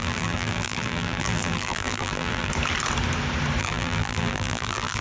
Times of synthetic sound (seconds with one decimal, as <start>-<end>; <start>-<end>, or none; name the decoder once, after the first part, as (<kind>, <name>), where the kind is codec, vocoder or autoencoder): 0.0-2.5 (vocoder, BigVGAN v2); 3.6-5.0